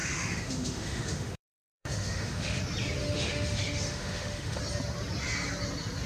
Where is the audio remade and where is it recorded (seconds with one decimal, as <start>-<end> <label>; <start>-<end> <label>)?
0.0-2.6 remade; 2.6-3.0 recorded; 3.0-4.6 remade; 4.6-6.1 recorded